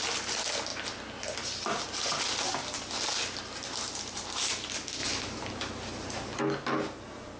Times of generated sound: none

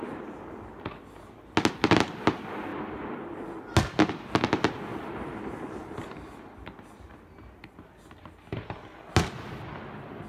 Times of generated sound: none

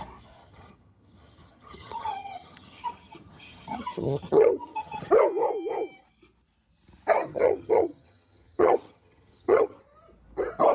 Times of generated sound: 0.4-5.1 (vocoder, HiFi-GAN); 7.3-9.8

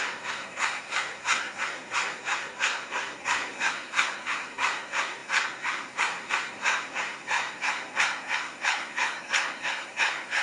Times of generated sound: 0.0-10.4 (codec, SNAC)